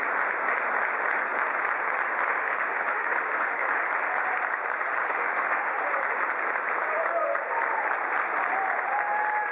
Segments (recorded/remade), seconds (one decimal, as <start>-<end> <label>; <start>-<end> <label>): 0.0-2.3 recorded; 2.3-3.8 remade; 3.8-5.0 recorded; 5.0-5.8 remade; 5.8-9.5 recorded